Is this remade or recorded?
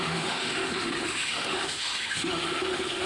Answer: remade